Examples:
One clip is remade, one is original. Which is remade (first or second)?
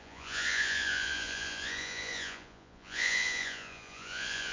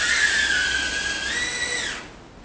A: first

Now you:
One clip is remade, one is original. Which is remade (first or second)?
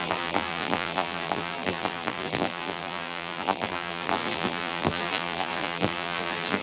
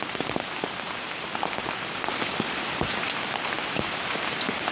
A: first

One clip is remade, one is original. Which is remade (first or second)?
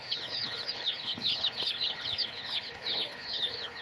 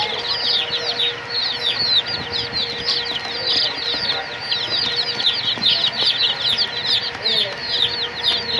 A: first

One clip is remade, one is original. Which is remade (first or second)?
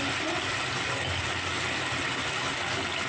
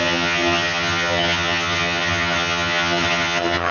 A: second